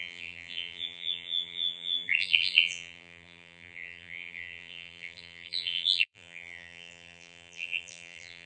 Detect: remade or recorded remade